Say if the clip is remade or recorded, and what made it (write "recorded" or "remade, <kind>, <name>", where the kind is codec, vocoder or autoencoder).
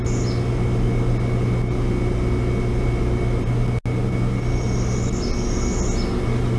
recorded